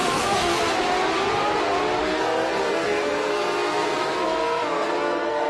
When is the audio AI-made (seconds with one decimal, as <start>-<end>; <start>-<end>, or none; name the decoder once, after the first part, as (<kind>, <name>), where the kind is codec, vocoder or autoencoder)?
0.0-0.6 (codec, SNAC); 2.0-5.5